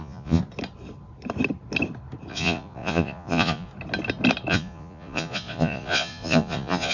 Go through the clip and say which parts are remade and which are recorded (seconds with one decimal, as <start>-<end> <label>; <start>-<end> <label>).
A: 0.0-0.4 remade; 0.4-2.3 recorded; 2.3-3.7 remade; 3.7-4.5 recorded; 4.5-6.9 remade